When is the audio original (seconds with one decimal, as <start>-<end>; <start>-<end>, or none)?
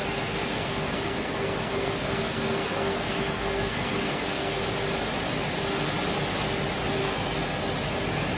4.6-7.0; 7.6-8.4